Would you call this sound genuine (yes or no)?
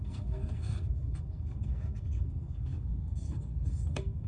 no